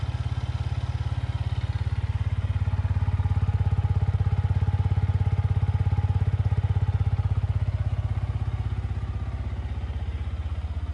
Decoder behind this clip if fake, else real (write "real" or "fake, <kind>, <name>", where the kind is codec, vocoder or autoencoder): real